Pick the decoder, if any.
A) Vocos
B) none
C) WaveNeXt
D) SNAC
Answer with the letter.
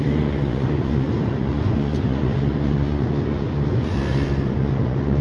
A